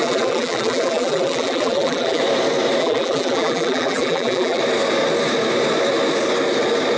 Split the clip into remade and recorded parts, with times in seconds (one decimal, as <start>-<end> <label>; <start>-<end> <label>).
0.0-2.2 remade; 2.2-2.8 recorded; 2.8-4.6 remade; 4.6-7.0 recorded